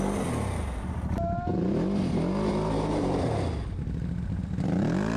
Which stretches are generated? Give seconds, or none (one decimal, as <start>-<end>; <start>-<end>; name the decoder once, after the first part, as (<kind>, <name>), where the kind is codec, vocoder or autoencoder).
none